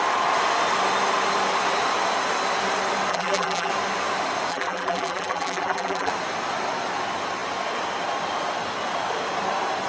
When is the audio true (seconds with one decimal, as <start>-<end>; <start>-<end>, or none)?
0.0-3.1; 3.7-4.5; 6.1-9.9